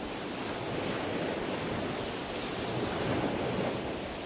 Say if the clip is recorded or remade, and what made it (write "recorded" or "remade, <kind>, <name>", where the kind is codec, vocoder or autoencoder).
recorded